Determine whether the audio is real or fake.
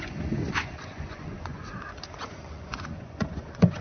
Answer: fake